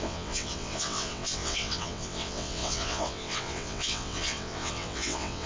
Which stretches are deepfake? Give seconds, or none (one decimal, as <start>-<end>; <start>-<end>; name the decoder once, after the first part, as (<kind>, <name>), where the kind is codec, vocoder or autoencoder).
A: 0.0-5.5 (vocoder, WaveNeXt)